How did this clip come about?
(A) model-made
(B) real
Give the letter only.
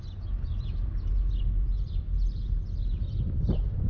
B